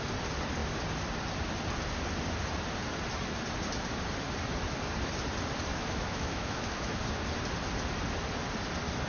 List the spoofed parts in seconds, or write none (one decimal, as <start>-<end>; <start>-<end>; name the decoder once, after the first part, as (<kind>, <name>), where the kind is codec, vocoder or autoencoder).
5.7-7.0 (autoencoder, DAC-VAE)